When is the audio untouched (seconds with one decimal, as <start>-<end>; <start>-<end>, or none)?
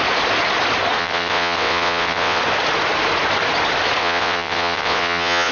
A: 0.0-1.0; 2.4-4.0